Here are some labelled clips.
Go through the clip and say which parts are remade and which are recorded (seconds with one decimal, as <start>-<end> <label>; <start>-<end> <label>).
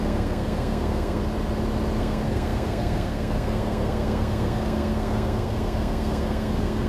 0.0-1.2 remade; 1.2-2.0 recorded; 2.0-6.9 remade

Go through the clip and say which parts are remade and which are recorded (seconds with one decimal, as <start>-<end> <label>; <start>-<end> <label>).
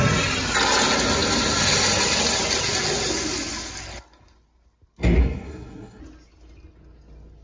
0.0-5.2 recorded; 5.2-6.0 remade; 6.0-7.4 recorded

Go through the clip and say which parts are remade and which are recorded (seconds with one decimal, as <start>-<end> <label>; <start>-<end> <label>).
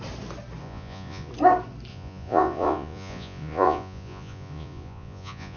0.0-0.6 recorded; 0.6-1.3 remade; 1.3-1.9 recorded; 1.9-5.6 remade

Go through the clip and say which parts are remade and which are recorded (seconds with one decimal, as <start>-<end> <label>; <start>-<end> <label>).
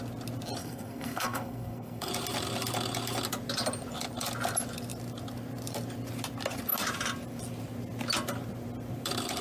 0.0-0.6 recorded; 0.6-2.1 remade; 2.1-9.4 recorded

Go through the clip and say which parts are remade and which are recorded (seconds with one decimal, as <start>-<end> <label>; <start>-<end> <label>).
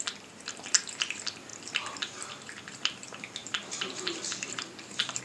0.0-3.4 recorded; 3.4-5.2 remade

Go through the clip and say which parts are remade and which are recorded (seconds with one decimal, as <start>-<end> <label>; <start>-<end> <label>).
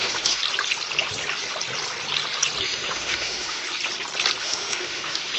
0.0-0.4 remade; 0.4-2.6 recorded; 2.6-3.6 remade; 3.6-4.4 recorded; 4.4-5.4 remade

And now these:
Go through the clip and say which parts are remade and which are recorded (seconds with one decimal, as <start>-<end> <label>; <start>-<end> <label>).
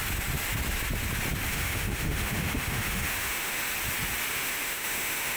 0.0-1.5 recorded; 1.5-3.7 remade; 3.7-4.3 recorded; 4.3-5.4 remade